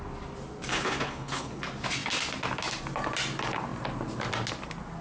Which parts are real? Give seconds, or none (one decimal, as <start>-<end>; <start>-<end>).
0.0-0.7; 1.6-5.0